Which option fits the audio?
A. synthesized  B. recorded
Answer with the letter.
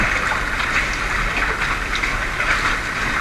B